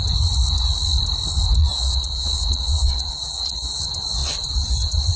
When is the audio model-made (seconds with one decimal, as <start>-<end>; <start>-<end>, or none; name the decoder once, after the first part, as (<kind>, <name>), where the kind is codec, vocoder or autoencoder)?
1.6-3.8 (vocoder, Vocos)

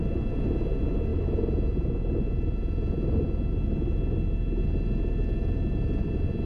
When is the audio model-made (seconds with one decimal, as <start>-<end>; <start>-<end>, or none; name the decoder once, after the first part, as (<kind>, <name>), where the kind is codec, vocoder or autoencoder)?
none

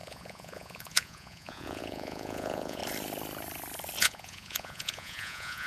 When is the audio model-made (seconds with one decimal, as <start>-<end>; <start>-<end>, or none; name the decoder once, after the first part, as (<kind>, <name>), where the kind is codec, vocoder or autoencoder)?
0.0-2.8 (vocoder, Vocos); 4.0-5.7

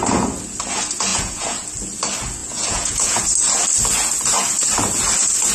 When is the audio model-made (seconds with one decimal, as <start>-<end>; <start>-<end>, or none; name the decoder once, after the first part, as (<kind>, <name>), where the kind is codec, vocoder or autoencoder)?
1.1-1.7 (vocoder, Vocos); 2.4-3.2

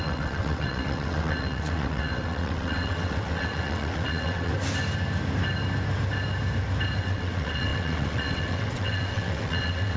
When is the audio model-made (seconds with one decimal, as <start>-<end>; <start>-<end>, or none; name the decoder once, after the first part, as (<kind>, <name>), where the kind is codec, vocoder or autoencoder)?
0.0-4.5 (vocoder, WaveNeXt); 7.0-10.0

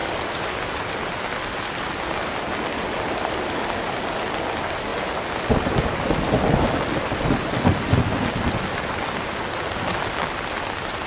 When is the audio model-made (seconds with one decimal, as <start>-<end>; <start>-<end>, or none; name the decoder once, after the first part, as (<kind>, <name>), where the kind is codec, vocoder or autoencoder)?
none

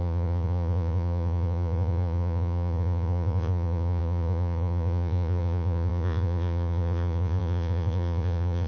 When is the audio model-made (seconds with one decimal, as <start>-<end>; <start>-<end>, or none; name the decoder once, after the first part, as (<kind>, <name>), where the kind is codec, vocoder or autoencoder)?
0.0-8.7 (vocoder, Vocos)